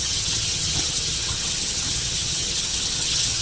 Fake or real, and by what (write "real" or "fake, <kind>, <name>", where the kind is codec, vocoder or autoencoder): fake, vocoder, HiFi-GAN